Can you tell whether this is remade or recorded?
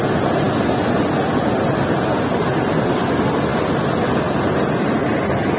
recorded